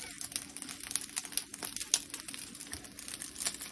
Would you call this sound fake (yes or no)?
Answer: no